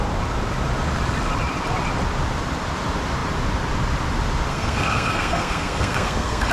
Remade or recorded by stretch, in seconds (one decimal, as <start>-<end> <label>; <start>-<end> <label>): 0.0-4.5 recorded; 4.5-6.5 remade